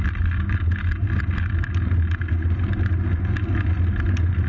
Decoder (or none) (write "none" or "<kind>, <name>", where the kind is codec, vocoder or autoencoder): none